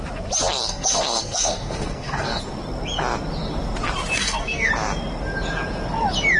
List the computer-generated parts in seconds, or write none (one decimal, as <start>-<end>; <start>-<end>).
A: 0.7-2.4; 4.2-4.7